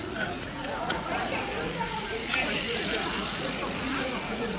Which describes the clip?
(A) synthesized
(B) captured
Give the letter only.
A